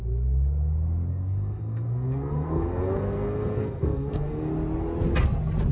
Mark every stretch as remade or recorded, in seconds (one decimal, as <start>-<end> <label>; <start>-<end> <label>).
0.0-1.1 recorded; 1.1-4.5 remade; 4.5-5.7 recorded